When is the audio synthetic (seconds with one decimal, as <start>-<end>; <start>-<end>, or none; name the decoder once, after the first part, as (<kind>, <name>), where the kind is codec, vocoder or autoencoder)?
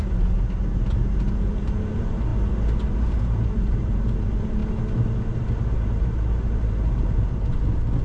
0.0-2.3 (vocoder, BigVGAN v2); 2.9-4.6; 5.9-8.0